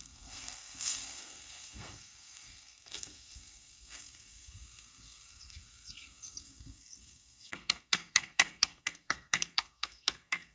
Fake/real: fake